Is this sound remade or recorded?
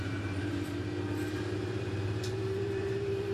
remade